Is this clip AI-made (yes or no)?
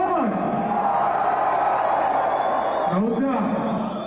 no